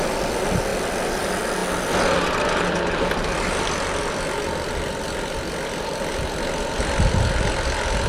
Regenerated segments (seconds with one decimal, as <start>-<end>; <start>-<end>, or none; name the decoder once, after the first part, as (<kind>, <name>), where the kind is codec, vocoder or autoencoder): none